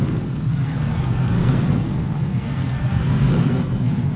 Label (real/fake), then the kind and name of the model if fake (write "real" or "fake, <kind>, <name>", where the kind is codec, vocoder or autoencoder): fake, codec, SNAC